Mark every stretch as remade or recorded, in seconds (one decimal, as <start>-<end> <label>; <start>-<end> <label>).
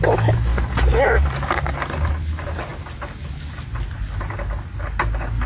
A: 0.0-0.5 recorded; 0.5-2.1 remade; 2.1-5.5 recorded